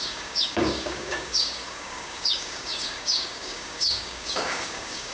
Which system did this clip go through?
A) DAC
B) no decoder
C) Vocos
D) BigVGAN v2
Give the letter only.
A